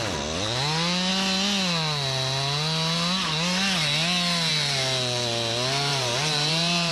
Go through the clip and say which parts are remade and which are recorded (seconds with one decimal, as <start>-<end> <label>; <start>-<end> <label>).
0.0-5.9 recorded; 5.9-6.9 remade